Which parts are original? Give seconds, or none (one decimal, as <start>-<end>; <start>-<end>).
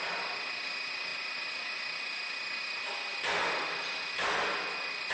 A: 0.0-5.1